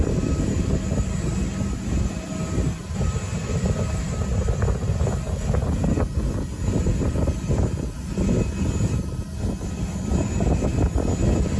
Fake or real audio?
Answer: real